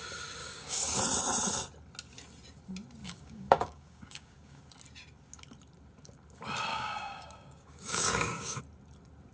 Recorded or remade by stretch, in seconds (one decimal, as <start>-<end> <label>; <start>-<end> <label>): 0.0-0.4 recorded; 0.4-1.0 remade; 1.0-3.0 recorded; 3.0-4.6 remade; 4.6-6.7 recorded; 6.7-8.6 remade; 8.6-9.3 recorded